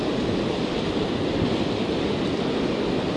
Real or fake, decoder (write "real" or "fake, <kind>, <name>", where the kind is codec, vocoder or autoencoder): real